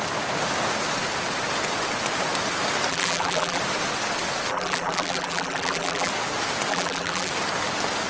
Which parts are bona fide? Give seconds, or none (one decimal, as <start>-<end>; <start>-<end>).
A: 0.0-2.9; 3.6-4.5; 6.1-6.7; 7.3-8.1